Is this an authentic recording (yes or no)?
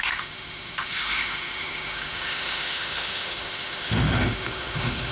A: no